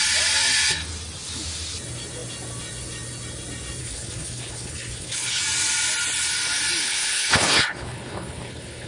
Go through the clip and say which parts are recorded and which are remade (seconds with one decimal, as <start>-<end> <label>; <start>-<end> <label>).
0.0-3.8 recorded; 3.8-5.4 remade; 5.4-6.8 recorded; 6.8-8.9 remade